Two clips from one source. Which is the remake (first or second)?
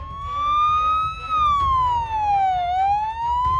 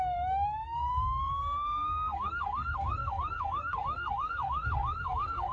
second